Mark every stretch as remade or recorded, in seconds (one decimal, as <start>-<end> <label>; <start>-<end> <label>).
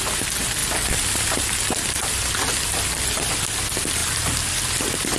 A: 0.0-5.2 recorded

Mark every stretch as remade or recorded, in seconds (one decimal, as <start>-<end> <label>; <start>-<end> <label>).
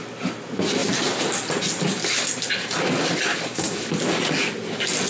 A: 0.0-3.3 recorded; 3.3-3.9 remade; 3.9-5.1 recorded